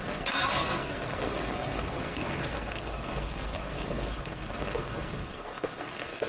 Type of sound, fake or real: fake